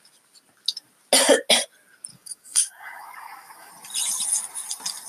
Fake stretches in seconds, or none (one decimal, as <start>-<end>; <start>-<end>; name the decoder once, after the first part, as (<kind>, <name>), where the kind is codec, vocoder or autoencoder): 2.1-3.7 (codec, DAC)